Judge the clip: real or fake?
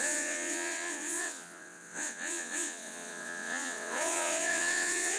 fake